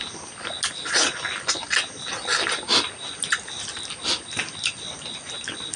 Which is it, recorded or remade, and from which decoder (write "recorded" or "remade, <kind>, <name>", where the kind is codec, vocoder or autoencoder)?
recorded